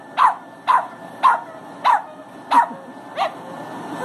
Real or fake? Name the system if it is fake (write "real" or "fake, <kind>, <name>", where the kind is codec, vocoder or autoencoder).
real